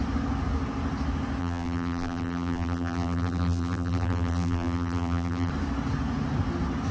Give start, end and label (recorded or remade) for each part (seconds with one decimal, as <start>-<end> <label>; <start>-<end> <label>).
0.0-1.4 recorded; 1.4-5.5 remade; 5.5-6.9 recorded